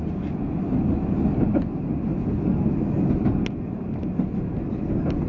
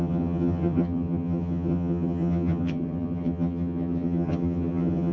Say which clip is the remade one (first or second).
second